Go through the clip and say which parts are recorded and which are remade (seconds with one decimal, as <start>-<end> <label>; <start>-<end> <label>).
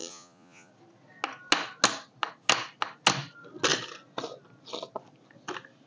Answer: 0.0-0.7 remade; 0.7-5.9 recorded